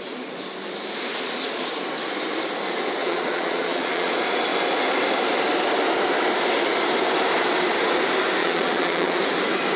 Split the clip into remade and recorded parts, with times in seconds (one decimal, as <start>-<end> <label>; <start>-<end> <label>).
0.0-3.0 recorded; 3.0-4.1 remade; 4.1-8.4 recorded; 8.4-9.2 remade; 9.2-9.8 recorded